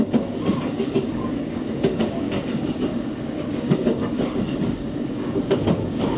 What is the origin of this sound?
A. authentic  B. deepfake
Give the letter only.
B